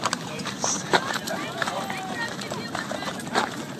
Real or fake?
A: fake